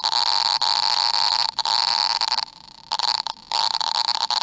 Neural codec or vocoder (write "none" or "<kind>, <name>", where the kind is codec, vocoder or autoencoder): none